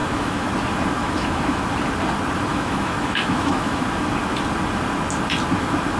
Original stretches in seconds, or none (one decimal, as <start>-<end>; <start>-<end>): 0.5-1.0; 1.6-2.5; 3.8-6.0